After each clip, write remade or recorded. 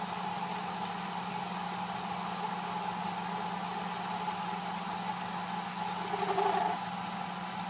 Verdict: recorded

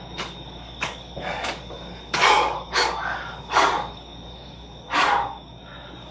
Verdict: remade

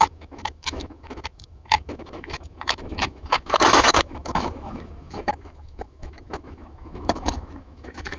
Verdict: remade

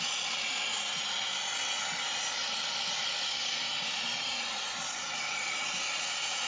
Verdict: recorded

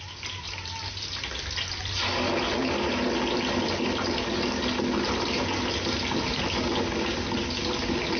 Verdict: recorded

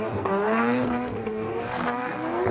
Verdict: remade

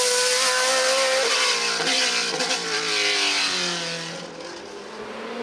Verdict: recorded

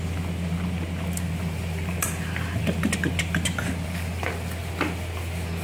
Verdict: recorded